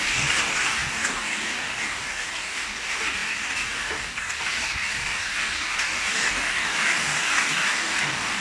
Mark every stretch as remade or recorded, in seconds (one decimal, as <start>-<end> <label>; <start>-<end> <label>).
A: 0.0-8.4 remade